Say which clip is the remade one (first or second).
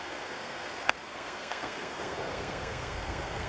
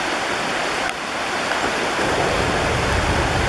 first